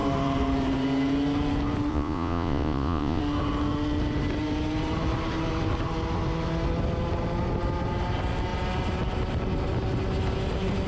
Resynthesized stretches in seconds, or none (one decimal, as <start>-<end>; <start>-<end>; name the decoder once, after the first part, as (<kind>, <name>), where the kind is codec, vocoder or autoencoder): 1.9-3.2 (vocoder, Vocos)